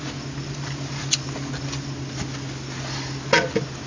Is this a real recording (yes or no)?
yes